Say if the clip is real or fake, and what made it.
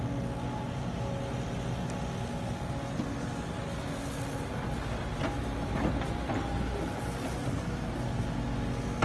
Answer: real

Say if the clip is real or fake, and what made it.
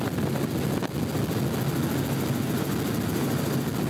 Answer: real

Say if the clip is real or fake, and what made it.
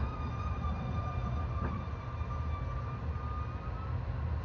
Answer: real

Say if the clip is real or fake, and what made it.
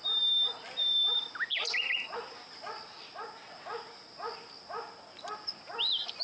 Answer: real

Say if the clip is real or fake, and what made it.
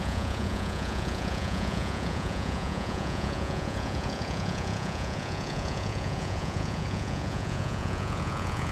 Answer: fake, vocoder, Vocos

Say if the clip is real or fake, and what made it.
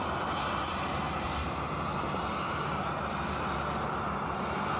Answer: real